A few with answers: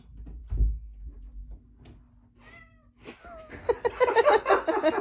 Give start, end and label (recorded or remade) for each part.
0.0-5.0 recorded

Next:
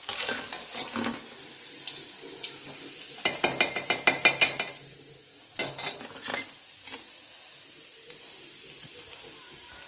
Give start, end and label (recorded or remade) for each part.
0.0-9.9 recorded

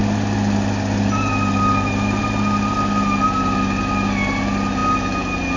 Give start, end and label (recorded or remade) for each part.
0.0-5.6 recorded